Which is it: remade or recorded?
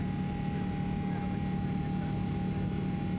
recorded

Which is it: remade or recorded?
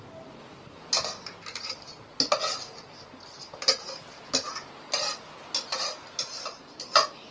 recorded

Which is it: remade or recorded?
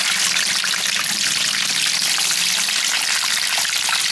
recorded